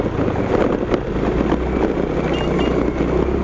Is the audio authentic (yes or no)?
yes